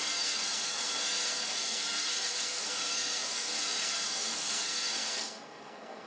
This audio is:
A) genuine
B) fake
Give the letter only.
B